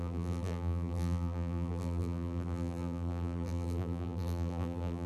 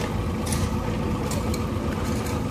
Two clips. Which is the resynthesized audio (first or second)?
first